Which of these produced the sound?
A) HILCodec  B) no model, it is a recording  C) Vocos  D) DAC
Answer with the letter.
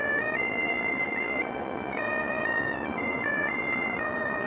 C